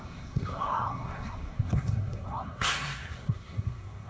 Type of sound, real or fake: fake